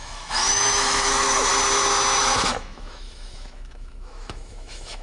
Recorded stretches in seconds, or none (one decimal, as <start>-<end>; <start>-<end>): 1.5-2.2